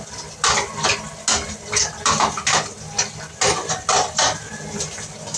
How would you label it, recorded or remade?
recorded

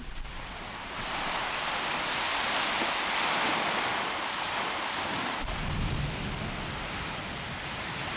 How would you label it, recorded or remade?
recorded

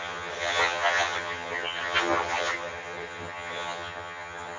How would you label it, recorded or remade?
remade